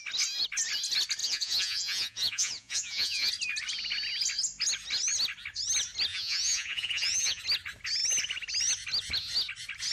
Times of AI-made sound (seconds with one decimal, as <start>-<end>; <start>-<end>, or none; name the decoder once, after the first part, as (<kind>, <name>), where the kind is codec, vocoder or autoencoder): 1.2-3.3 (vocoder, Vocos); 6.1-7.4